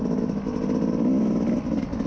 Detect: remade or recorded recorded